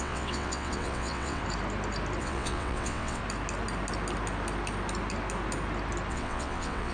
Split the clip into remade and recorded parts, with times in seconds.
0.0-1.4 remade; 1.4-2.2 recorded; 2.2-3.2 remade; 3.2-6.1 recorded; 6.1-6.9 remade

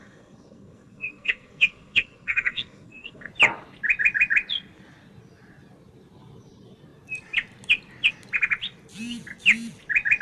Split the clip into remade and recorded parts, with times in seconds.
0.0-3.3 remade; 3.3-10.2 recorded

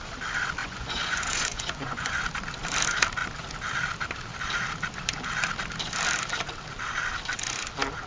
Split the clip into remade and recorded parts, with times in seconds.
0.0-0.6 recorded; 0.6-2.2 remade; 2.2-8.1 recorded

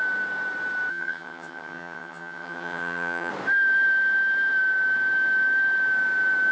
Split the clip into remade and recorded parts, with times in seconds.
0.0-0.9 recorded; 0.9-3.3 remade; 3.3-6.5 recorded

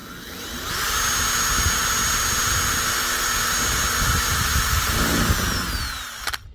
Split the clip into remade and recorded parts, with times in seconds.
0.0-6.5 recorded